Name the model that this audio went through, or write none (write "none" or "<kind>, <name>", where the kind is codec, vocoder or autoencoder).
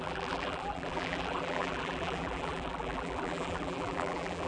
vocoder, BigVGAN v2